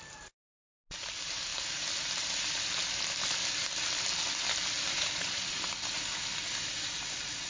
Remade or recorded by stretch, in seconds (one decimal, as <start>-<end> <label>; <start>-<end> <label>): 0.0-4.9 recorded; 4.9-5.7 remade; 5.7-7.5 recorded